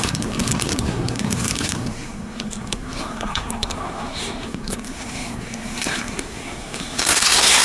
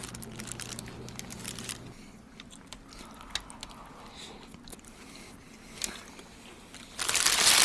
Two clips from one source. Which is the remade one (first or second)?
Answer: first